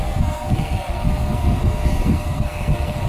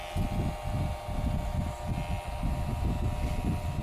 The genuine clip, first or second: second